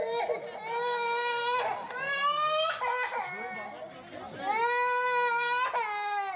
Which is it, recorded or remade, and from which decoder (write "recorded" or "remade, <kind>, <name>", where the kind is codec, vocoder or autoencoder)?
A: recorded